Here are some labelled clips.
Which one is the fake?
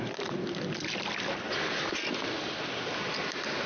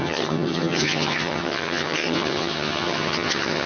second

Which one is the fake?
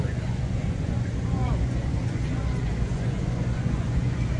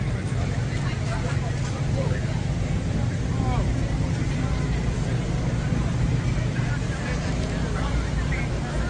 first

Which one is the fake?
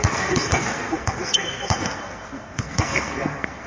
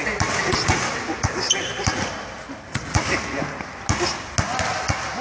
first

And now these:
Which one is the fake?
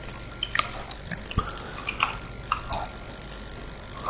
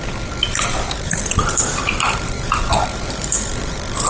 second